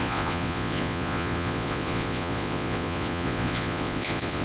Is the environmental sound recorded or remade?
remade